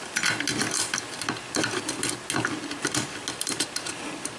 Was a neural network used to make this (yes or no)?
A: no